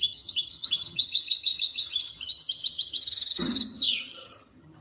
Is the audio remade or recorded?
remade